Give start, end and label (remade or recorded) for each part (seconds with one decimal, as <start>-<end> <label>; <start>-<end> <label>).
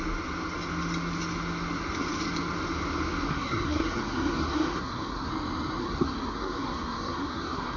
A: 0.0-3.3 recorded; 3.3-5.3 remade; 5.3-5.8 recorded; 5.8-7.8 remade